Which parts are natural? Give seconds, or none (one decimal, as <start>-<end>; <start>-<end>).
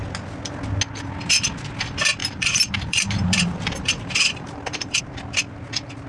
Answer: 0.0-2.2; 5.0-6.1